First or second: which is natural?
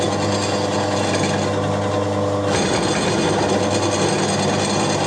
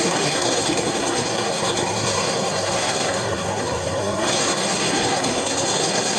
first